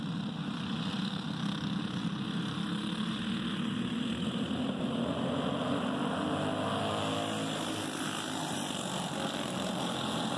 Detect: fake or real real